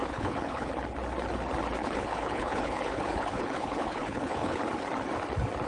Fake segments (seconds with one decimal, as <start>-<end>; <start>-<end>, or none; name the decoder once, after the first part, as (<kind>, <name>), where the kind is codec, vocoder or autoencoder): 0.0-0.7 (codec, HILCodec); 1.8-4.6